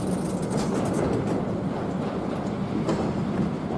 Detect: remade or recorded recorded